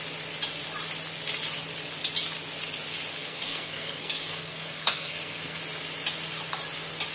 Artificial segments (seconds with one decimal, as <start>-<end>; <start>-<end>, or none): 3.1-5.6